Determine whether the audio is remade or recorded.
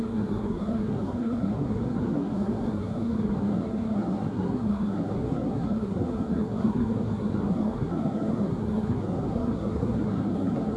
remade